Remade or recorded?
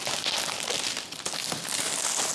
recorded